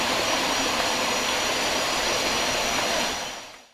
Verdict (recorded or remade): recorded